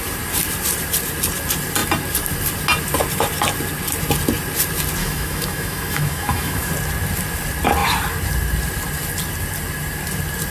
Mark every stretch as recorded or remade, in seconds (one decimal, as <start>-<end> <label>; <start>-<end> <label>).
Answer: 0.0-5.0 recorded; 5.0-6.7 remade; 6.7-10.5 recorded